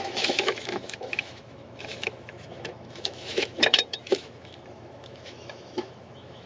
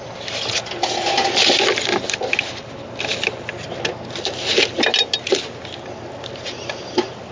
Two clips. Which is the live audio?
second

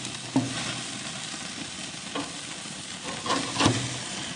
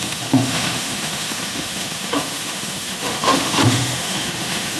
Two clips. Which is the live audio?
first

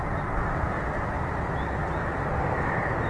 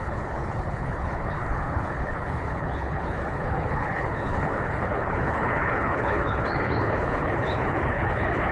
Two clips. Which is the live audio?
first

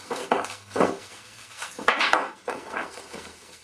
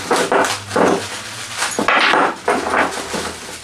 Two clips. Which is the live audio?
second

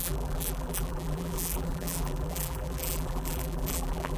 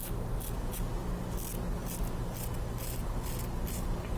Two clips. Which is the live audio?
second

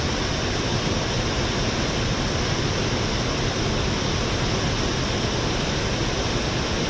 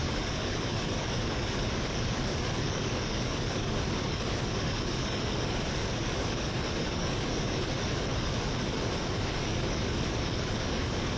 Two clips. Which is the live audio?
first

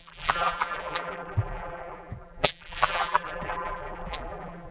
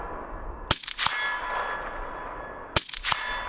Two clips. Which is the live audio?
second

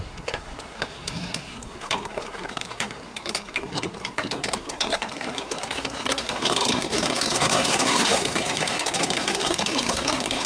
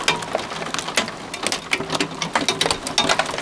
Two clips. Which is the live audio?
second